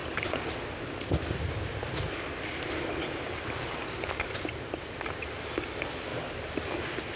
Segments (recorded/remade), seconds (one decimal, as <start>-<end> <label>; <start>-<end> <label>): 0.0-7.2 recorded